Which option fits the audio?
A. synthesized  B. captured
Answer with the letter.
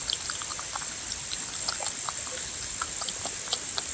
B